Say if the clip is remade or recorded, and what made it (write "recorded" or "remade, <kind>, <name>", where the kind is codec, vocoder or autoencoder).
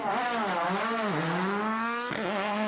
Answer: recorded